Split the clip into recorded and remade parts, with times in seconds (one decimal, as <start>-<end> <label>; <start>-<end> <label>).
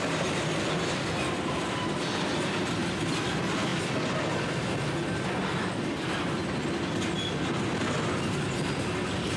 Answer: 0.0-9.4 recorded